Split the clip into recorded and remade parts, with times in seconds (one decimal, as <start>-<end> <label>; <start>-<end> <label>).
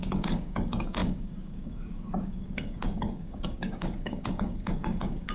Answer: 0.0-5.3 remade